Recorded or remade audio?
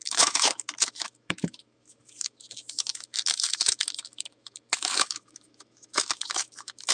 remade